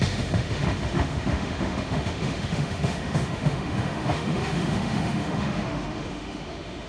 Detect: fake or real fake